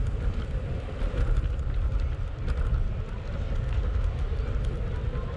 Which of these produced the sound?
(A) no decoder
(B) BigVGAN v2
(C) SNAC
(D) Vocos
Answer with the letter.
A